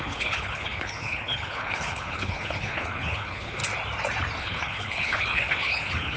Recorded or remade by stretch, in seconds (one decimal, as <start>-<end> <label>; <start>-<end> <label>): 0.0-3.6 remade; 3.6-4.4 recorded; 4.4-6.2 remade